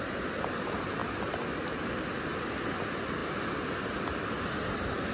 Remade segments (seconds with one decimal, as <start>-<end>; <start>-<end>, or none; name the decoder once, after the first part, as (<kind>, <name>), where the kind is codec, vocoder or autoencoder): none